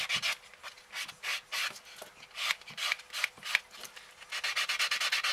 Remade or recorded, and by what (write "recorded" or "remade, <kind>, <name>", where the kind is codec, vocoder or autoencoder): recorded